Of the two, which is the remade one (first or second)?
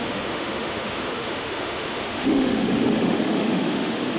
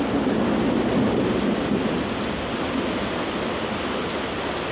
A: first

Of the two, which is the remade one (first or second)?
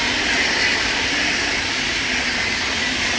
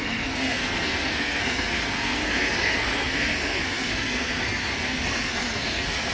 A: second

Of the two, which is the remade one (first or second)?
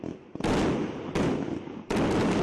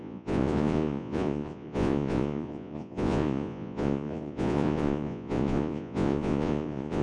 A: second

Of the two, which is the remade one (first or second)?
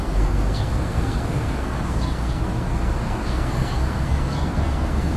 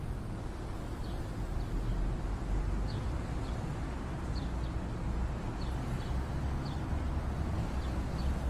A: first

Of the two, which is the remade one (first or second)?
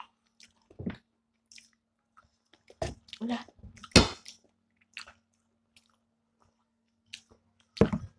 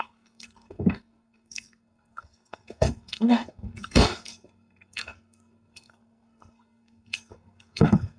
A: second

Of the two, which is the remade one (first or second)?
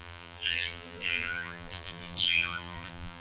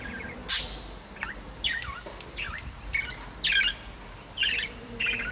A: first